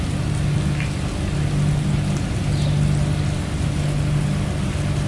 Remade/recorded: recorded